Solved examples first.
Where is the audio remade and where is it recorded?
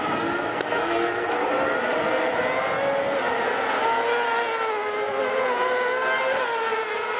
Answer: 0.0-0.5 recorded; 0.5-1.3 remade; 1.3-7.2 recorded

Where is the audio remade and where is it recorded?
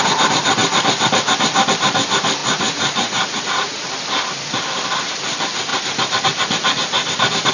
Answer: 0.0-2.4 recorded; 2.4-3.9 remade; 3.9-7.5 recorded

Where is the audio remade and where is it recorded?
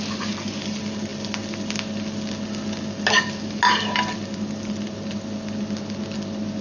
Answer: 0.0-6.6 recorded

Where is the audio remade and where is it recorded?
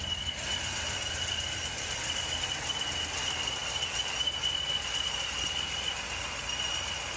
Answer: 0.0-7.2 recorded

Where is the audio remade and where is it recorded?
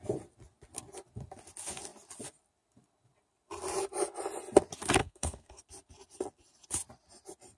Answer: 0.0-5.0 recorded; 5.0-5.6 remade; 5.6-7.6 recorded